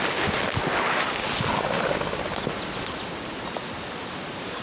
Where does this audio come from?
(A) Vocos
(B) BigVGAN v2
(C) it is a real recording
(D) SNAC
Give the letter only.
C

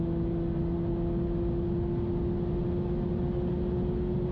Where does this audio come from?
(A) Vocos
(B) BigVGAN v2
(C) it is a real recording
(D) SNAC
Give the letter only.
C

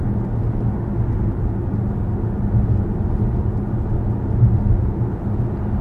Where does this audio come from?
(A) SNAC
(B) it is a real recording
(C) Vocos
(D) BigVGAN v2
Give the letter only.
B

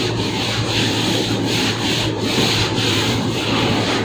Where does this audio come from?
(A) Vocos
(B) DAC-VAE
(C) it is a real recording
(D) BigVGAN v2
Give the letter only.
D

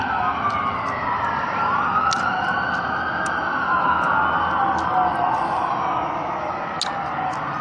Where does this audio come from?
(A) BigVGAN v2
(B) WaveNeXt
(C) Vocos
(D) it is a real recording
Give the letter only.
D